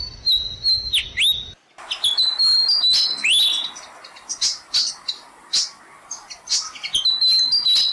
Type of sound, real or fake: real